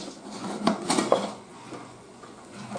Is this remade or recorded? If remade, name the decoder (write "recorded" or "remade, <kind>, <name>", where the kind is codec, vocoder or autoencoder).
remade, vocoder, Vocos